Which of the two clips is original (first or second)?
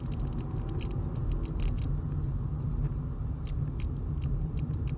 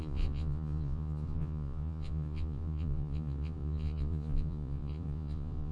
first